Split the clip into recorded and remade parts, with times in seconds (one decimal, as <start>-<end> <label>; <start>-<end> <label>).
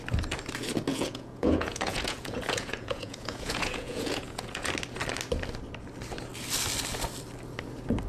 0.0-0.9 recorded; 0.9-4.7 remade; 4.7-8.1 recorded